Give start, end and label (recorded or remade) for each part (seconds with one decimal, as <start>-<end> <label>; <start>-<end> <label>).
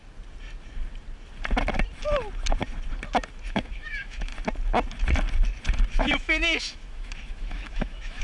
0.0-3.5 recorded; 3.5-4.3 remade; 4.3-5.9 recorded; 5.9-8.2 remade